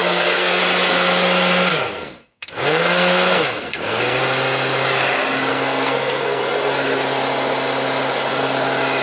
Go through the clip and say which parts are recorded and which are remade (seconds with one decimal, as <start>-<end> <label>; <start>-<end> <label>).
0.0-0.6 remade; 0.6-1.7 recorded; 1.7-4.2 remade; 4.2-5.5 recorded; 5.5-6.4 remade; 6.4-9.0 recorded